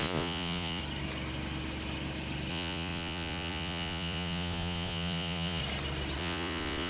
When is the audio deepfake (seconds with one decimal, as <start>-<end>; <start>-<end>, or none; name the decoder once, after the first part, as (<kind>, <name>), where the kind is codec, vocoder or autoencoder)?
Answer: 0.0-0.8 (vocoder, Vocos); 2.5-5.6; 6.2-6.9